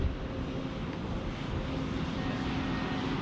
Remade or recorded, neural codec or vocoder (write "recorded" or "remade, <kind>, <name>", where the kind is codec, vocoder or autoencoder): recorded